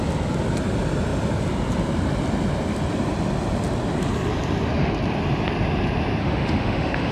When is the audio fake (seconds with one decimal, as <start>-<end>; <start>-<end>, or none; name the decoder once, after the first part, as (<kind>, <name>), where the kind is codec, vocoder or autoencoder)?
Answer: 6.2-7.1 (autoencoder, DAC-VAE)